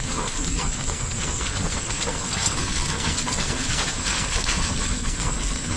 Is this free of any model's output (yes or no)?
no